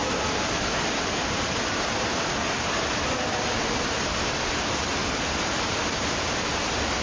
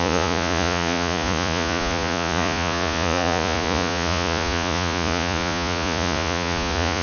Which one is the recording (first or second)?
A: first